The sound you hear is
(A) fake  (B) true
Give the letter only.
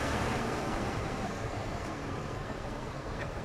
A